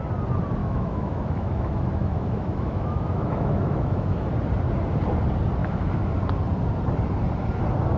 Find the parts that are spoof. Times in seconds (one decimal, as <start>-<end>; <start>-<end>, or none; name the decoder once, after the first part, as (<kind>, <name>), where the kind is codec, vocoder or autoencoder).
0.6-4.3 (autoencoder, DAC-VAE); 5.6-6.1